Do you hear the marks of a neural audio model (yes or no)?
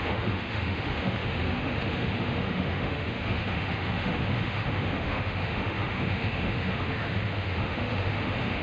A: yes